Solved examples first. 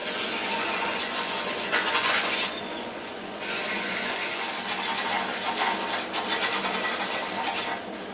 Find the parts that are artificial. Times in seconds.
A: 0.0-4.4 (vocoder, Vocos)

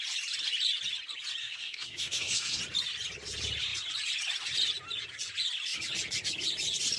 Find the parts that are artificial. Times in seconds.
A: 1.4-2.6 (codec, SNAC)

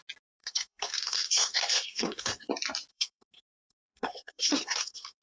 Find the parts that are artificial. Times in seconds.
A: 0.4-2.5 (codec, SNAC); 2.9-5.2

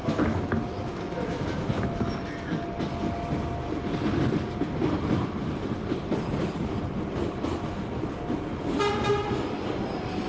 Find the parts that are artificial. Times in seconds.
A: 0.0-1.8 (autoencoder, DAC-VAE)

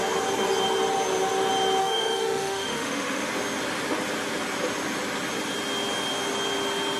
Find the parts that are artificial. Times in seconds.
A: 1.8-3.3 (autoencoder, DAC-VAE)

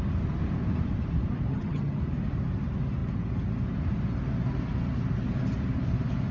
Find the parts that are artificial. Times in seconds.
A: 1.5-2.0 (vocoder, HiFi-GAN)

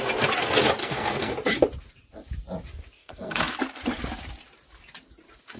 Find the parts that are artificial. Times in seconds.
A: 0.8-1.3 (codec, SNAC); 3.0-3.6